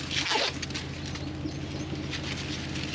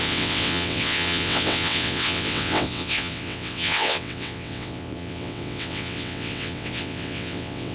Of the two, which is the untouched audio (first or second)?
first